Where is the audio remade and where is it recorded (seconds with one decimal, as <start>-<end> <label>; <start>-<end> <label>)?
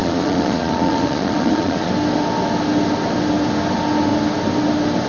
0.0-1.9 remade; 1.9-5.1 recorded